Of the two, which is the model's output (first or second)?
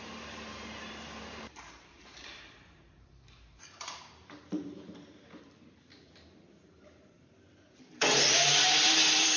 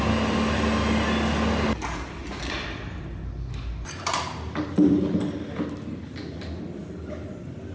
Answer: first